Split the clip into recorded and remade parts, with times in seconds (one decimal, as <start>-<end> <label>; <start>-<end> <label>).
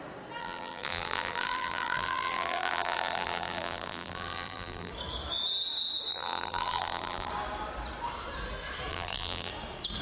0.0-0.4 recorded; 0.4-4.9 remade; 4.9-6.1 recorded; 6.1-7.3 remade; 7.3-8.9 recorded; 8.9-9.5 remade; 9.5-10.0 recorded